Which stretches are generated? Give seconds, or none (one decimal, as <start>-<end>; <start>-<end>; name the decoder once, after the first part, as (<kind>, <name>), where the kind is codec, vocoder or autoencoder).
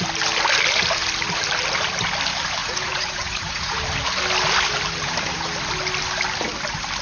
2.6-3.8 (vocoder, Vocos)